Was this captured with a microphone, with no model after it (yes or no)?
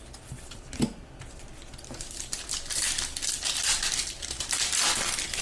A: yes